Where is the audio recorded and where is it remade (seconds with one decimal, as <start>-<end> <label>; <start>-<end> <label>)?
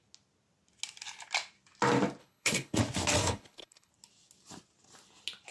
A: 0.0-2.2 recorded; 2.2-2.8 remade; 2.8-3.2 recorded; 3.2-3.9 remade; 3.9-5.5 recorded